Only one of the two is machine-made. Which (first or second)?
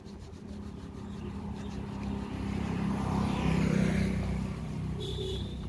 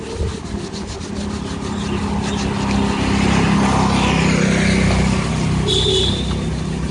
first